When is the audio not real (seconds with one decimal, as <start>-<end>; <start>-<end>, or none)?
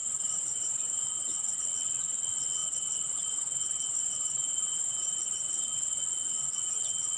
0.0-1.6; 2.6-6.0